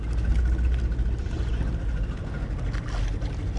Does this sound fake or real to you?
real